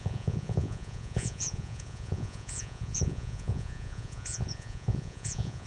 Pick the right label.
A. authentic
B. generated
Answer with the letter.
B